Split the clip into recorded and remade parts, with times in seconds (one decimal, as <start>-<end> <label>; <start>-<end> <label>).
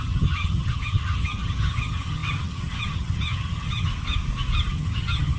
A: 0.0-3.9 remade; 3.9-4.7 recorded; 4.7-5.4 remade